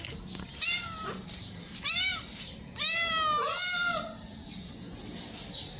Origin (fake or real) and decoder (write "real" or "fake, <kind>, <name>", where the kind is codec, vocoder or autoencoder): real